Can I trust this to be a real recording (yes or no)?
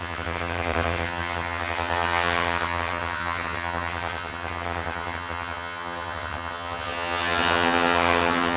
no